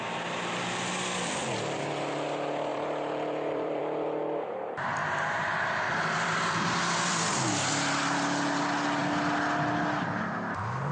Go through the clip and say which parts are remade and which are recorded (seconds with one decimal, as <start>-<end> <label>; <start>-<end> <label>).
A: 0.0-2.7 recorded; 2.7-3.8 remade; 3.8-5.0 recorded; 5.0-8.6 remade; 8.6-10.9 recorded